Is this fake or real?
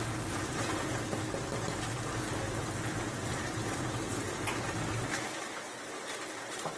real